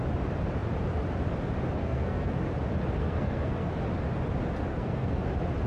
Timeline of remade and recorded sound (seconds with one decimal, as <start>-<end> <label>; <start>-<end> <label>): 0.0-1.8 recorded; 1.8-2.3 remade; 2.3-3.0 recorded; 3.0-3.7 remade; 3.7-4.7 recorded; 4.7-5.2 remade; 5.2-5.7 recorded